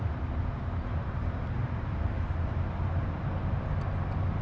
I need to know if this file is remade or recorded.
recorded